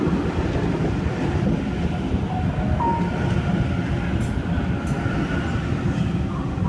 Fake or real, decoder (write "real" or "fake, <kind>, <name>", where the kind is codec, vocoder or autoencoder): real